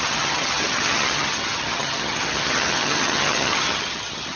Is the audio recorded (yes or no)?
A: no